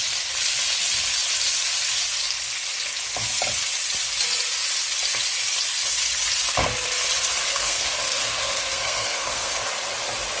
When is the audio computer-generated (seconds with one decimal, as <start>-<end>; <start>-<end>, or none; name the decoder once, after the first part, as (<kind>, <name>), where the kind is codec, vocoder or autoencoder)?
7.5-9.6 (codec, SNAC)

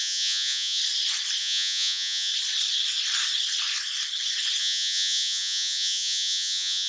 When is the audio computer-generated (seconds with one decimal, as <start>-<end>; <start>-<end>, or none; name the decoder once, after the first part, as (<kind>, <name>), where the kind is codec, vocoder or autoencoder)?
0.0-0.8 (vocoder, Vocos); 1.4-2.3; 4.6-6.9

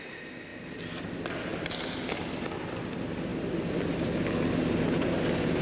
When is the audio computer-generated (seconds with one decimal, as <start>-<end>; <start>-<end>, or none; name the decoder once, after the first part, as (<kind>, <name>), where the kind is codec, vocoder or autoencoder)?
none

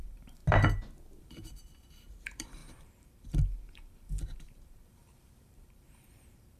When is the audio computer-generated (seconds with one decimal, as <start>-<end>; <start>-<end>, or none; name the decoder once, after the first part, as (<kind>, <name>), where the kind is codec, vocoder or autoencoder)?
0.0-0.4 (vocoder, BigVGAN v2); 1.2-6.6

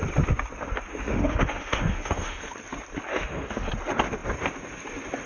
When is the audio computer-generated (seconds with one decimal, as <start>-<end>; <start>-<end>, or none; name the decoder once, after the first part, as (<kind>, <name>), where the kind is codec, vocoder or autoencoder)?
0.9-2.5 (autoencoder, DAC-VAE); 3.1-3.7

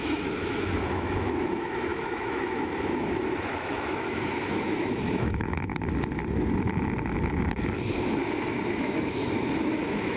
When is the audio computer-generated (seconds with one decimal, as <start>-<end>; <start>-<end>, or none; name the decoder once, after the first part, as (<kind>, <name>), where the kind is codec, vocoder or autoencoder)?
0.0-5.7 (autoencoder, DAC-VAE); 8.8-10.2

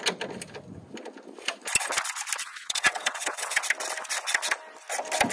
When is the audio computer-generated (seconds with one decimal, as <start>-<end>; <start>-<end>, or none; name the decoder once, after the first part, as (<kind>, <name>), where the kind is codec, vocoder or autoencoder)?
2.4-3.6 (vocoder, WaveNeXt)

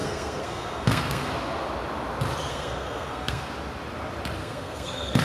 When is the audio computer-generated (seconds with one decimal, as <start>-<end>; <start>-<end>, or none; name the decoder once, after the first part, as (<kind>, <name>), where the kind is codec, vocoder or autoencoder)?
0.0-1.3 (codec, SNAC); 2.5-3.5; 4.4-5.2